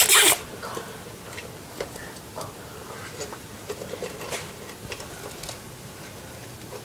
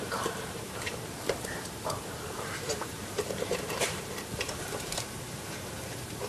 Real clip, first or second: first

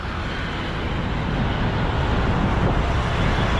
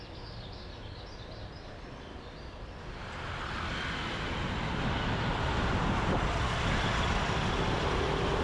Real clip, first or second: first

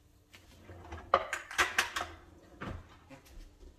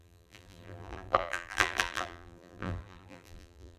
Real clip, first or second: first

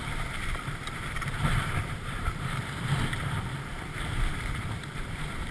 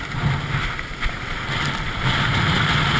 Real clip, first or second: second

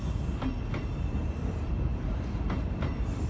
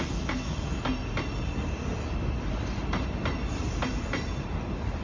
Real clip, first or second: second